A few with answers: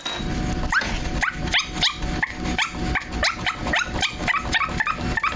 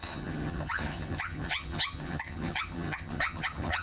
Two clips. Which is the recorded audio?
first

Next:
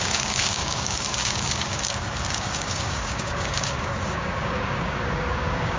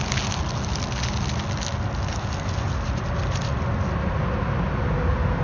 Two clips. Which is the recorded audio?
second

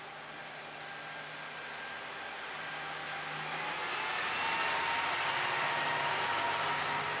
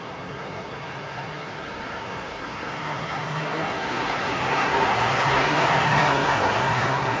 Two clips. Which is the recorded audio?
first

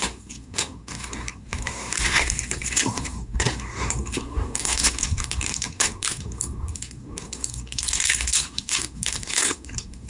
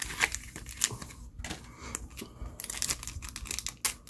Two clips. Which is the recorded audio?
second